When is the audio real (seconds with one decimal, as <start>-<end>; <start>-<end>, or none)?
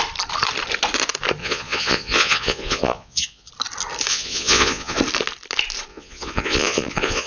0.0-1.4; 3.5-4.1; 5.0-5.9